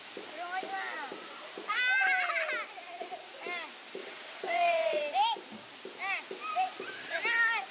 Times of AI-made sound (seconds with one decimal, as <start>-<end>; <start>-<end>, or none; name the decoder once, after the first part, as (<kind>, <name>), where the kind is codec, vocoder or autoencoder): 4.0-5.0 (vocoder, WaveNeXt)